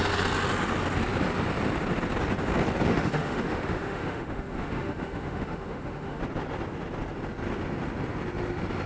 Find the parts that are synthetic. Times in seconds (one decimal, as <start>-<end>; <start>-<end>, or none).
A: 2.9-6.2